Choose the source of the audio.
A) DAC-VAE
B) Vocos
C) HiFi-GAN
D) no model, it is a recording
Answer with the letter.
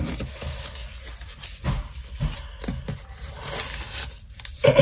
D